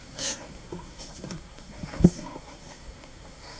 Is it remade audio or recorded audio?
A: remade